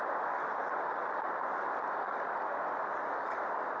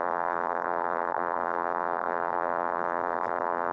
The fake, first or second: second